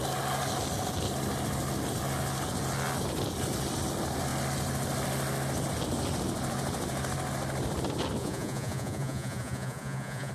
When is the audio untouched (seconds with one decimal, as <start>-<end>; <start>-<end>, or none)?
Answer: 0.0-8.2